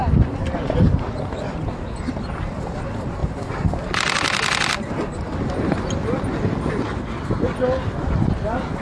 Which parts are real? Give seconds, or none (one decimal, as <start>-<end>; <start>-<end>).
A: 0.0-8.8